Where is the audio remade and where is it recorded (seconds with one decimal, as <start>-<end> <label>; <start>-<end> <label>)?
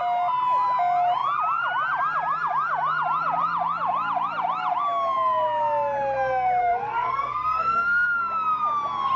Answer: 0.0-6.6 recorded; 6.6-8.2 remade; 8.2-9.2 recorded